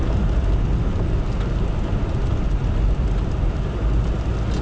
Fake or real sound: real